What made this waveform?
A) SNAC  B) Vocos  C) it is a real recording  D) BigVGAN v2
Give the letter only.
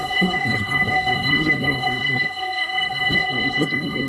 A